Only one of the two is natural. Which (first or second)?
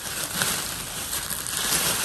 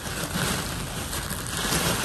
second